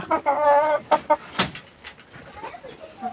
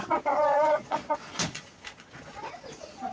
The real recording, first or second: first